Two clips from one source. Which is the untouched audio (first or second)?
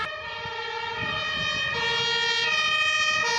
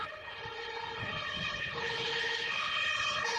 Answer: first